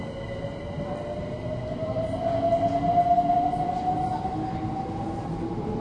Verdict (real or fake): real